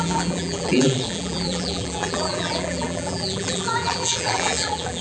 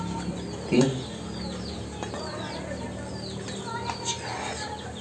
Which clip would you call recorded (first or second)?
second